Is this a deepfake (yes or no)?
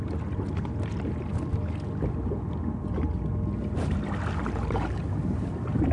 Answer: no